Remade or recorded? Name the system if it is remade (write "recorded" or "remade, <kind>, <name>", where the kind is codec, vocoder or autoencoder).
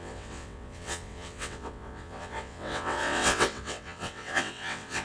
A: remade, vocoder, WaveNeXt